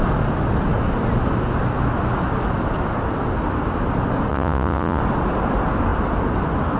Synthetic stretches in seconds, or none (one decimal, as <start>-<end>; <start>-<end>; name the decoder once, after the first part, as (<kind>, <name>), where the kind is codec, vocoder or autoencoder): 4.3-5.0 (vocoder, Vocos)